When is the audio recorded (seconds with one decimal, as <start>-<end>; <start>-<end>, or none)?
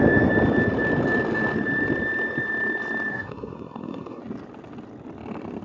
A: 0.0-3.1; 4.2-5.6